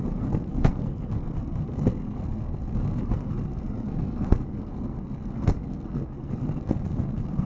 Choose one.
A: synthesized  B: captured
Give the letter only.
A